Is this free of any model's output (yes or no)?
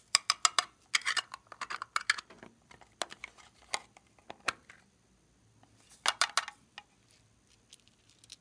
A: yes